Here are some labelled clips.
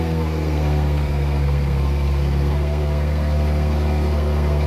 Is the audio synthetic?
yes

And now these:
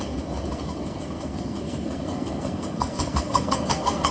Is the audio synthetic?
yes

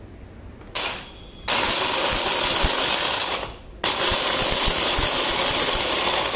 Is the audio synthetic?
no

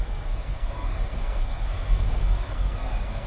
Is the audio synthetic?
yes